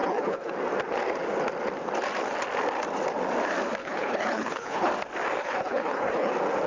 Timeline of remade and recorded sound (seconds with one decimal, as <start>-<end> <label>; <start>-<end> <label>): 0.0-0.5 remade; 0.5-3.8 recorded; 3.8-4.9 remade; 4.9-5.4 recorded; 5.4-6.3 remade; 6.3-6.7 recorded